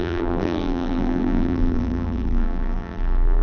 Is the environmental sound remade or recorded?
remade